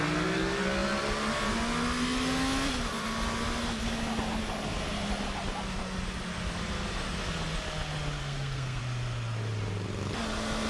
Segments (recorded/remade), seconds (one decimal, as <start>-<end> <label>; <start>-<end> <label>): 0.0-8.2 recorded; 8.2-8.8 remade; 8.8-10.7 recorded